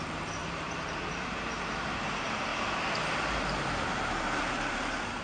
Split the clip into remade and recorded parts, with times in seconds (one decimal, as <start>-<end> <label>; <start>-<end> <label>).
0.0-2.5 remade; 2.5-3.1 recorded; 3.1-5.2 remade